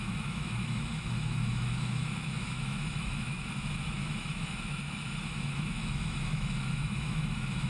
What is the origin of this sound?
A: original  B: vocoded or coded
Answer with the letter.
B